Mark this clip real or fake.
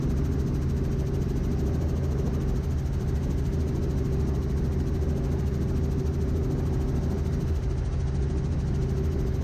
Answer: real